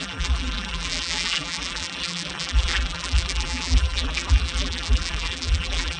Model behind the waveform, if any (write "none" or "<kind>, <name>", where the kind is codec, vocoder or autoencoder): vocoder, BigVGAN v2